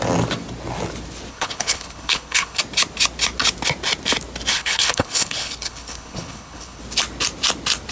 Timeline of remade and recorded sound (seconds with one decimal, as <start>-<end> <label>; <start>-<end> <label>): 0.0-1.3 recorded; 1.3-2.6 remade; 2.6-4.5 recorded; 4.5-6.8 remade; 6.8-7.9 recorded